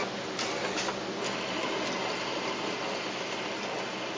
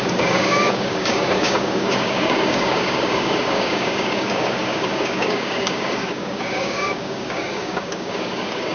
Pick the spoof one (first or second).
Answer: second